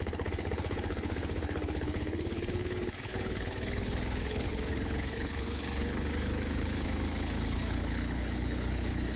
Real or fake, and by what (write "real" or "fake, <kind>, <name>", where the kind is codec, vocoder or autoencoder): fake, codec, HILCodec